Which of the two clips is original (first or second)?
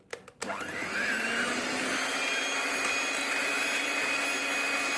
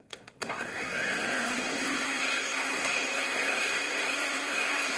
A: first